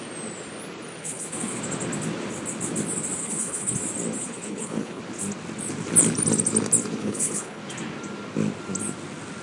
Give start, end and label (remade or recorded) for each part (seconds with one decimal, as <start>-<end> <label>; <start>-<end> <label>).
0.0-1.0 recorded; 1.0-1.6 remade; 1.6-3.2 recorded; 3.2-3.7 remade; 3.7-4.2 recorded; 4.2-5.0 remade; 5.0-7.0 recorded; 7.0-7.6 remade; 7.6-9.4 recorded